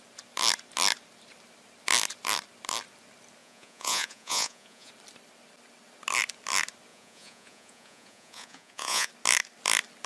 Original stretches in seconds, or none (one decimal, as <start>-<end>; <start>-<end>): 0.0-3.4; 4.9-6.9; 9.1-10.1